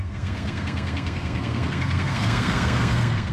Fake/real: fake